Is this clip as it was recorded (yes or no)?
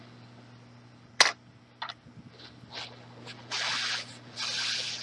yes